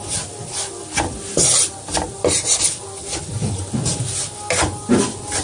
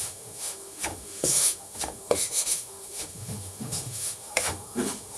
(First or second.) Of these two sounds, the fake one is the second